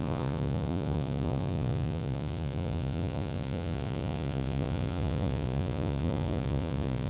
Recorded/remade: remade